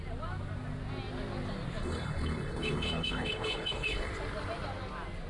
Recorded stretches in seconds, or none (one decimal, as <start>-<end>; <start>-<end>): 0.0-1.8; 4.1-5.3